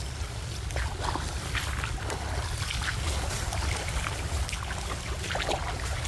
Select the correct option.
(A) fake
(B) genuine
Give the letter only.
B